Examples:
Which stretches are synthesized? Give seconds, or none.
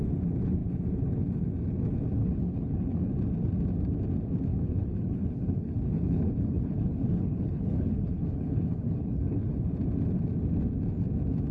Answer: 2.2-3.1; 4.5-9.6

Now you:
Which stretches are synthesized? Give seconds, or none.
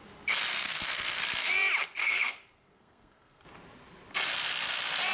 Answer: 0.6-1.2; 2.0-3.4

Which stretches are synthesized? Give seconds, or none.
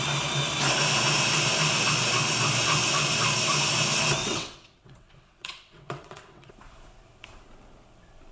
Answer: 4.2-6.5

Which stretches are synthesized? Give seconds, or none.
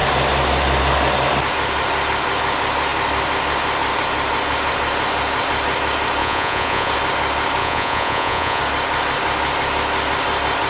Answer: 6.2-6.9; 7.6-8.6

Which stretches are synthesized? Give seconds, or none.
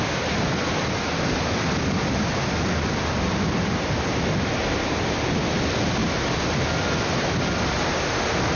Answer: none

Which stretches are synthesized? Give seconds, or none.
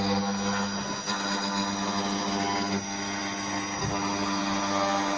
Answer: none